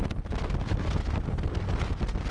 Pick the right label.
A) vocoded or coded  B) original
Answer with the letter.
B